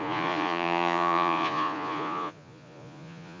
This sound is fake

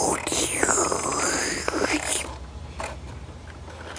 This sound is fake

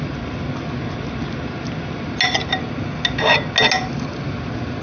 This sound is real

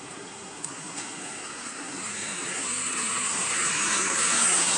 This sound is fake